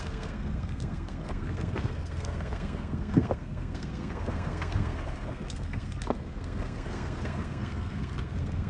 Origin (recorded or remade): remade